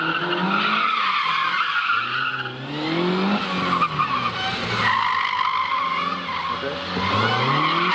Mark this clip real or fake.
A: real